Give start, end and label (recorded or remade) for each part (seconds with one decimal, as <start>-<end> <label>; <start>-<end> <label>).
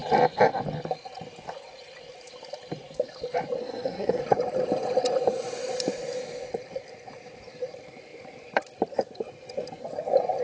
0.0-3.6 recorded; 3.6-4.2 remade; 4.2-10.4 recorded